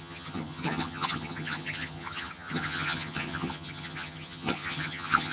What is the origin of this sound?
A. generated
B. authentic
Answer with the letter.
A